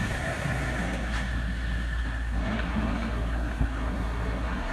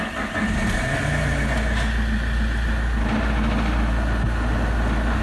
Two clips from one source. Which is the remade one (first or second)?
first